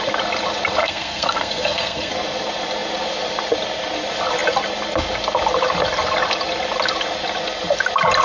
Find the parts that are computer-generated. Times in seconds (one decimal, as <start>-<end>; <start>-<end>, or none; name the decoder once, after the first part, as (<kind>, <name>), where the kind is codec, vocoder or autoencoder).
0.8-2.1 (codec, SNAC)